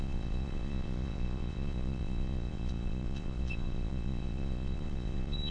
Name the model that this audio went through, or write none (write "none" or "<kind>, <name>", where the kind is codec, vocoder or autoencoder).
vocoder, Vocos